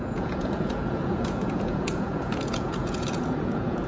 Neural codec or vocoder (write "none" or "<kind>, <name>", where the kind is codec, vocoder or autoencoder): vocoder, Vocos